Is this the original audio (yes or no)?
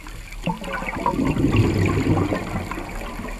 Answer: yes